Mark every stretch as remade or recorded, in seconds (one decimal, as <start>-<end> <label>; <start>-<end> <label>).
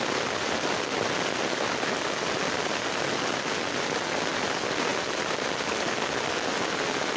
0.0-7.2 recorded